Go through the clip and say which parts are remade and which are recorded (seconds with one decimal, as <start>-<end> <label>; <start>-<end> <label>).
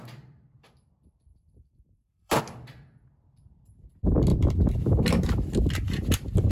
0.0-1.3 recorded; 1.3-2.4 remade; 2.4-6.5 recorded